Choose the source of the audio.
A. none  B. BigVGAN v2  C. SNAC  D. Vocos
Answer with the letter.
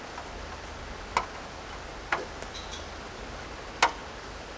A